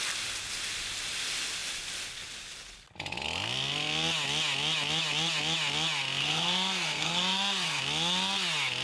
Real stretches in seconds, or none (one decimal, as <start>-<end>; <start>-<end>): 0.0-6.2; 7.8-8.8